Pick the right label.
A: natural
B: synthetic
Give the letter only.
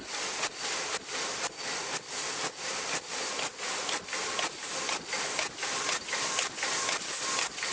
A